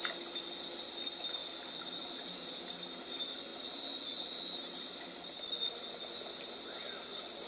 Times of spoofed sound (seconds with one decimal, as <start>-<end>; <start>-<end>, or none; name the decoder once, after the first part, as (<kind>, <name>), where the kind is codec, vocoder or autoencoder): 1.4-2.5 (vocoder, BigVGAN v2)